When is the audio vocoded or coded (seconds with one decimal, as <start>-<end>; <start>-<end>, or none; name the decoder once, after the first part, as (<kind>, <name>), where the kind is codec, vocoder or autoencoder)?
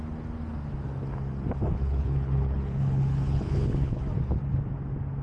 1.7-4.0 (codec, HILCodec)